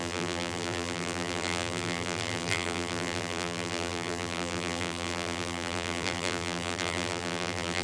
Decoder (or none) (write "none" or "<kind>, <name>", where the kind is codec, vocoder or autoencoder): vocoder, BigVGAN v2